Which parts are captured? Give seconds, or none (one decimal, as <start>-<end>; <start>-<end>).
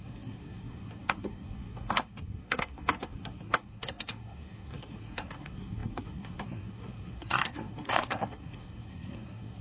none